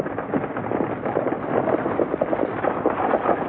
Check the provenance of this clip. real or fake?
real